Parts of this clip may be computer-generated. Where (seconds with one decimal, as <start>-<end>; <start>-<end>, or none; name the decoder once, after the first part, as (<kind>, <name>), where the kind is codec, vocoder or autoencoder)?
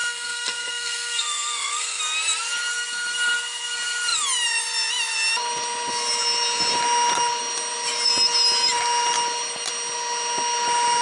0.0-2.0 (codec, SNAC)